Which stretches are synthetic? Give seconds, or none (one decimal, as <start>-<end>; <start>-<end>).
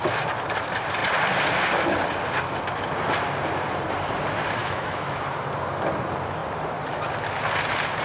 4.6-5.2